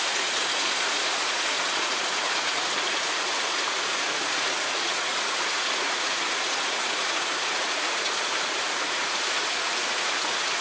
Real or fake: fake